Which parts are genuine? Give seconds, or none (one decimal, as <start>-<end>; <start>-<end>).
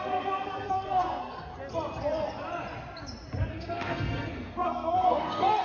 1.5-3.5